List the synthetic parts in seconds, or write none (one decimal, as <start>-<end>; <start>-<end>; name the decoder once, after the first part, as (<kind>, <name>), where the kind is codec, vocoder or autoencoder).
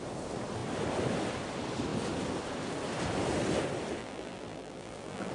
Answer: 4.0-5.3 (vocoder, BigVGAN v2)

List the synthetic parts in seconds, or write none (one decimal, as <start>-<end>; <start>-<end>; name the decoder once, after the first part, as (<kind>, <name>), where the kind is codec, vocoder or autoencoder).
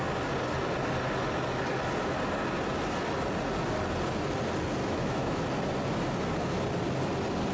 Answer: 4.8-5.4 (autoencoder, DAC-VAE)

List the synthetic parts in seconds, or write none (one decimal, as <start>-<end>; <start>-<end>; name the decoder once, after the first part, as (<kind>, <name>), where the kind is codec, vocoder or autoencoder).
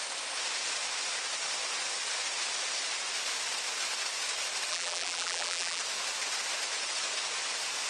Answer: 4.7-5.8 (vocoder, BigVGAN v2)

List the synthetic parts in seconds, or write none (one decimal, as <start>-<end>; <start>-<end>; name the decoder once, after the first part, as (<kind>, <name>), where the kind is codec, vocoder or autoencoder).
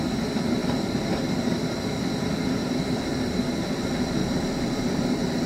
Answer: 4.2-5.5 (vocoder, BigVGAN v2)